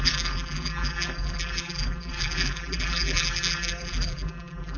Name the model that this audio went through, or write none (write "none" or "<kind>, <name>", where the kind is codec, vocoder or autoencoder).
vocoder, BigVGAN v2